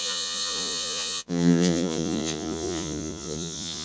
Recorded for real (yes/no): no